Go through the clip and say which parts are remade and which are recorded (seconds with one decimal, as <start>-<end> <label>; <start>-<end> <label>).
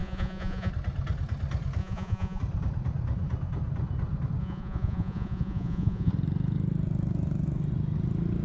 0.0-0.7 remade; 0.7-1.8 recorded; 1.8-2.4 remade; 2.4-4.4 recorded; 4.4-6.1 remade; 6.1-8.4 recorded